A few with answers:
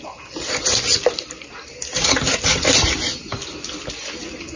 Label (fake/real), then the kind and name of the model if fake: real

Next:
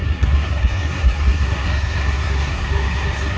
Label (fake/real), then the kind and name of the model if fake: fake, codec, SNAC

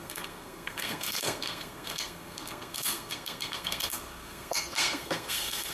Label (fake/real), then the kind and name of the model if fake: fake, codec, SNAC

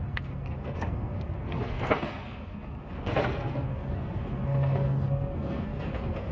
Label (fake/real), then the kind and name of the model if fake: fake, codec, SNAC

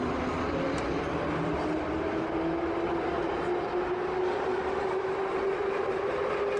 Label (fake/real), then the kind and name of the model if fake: real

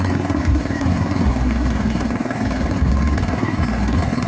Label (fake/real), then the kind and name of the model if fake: fake, codec, SNAC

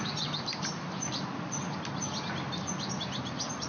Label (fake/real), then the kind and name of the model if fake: real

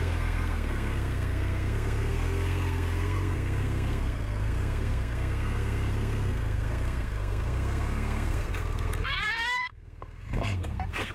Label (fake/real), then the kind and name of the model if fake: fake, codec, SNAC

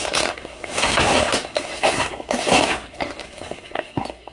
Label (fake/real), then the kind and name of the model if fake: fake, codec, SNAC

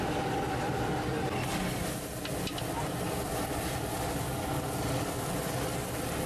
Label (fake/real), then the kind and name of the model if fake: real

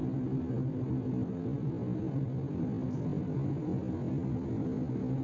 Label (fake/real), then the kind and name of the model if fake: real